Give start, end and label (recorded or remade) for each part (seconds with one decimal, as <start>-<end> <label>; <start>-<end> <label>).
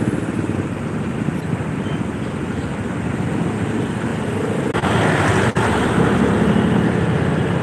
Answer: 0.0-7.6 recorded